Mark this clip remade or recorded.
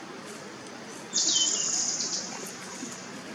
recorded